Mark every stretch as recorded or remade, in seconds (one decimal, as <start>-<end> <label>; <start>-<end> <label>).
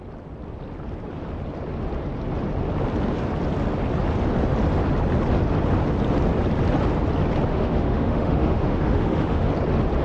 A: 0.0-7.5 recorded; 7.5-9.5 remade; 9.5-10.0 recorded